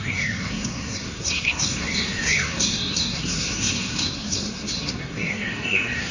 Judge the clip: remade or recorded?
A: remade